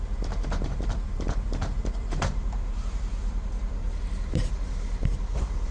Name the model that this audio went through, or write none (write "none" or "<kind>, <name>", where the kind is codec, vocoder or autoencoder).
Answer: vocoder, BigVGAN v2